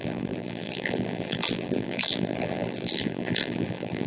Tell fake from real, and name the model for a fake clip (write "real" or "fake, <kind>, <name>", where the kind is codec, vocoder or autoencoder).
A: fake, vocoder, BigVGAN v2